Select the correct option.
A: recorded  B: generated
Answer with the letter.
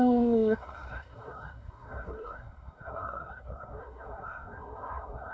B